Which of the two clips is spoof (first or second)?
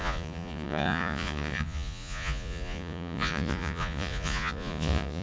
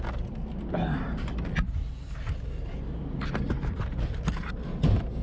first